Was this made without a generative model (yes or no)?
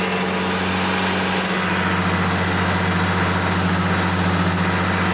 yes